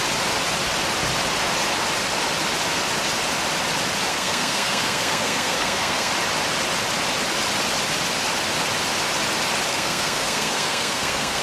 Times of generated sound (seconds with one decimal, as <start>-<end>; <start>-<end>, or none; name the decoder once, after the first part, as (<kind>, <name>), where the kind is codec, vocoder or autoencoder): 4.1-6.1 (codec, SNAC); 9.7-11.4